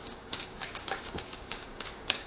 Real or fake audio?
fake